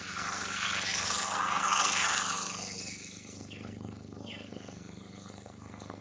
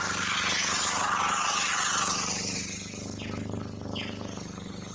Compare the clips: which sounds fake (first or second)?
first